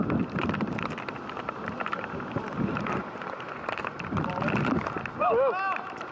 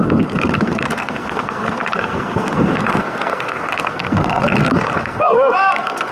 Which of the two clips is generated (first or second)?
second